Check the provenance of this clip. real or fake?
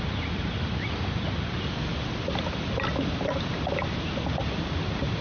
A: real